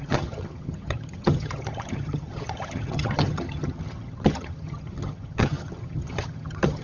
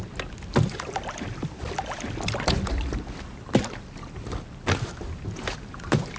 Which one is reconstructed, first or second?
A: first